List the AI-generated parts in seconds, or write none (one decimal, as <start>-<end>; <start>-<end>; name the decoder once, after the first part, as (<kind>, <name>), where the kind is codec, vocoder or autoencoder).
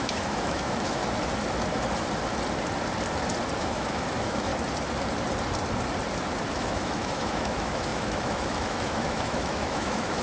0.0-1.0 (autoencoder, DAC-VAE); 3.6-4.5; 6.5-10.2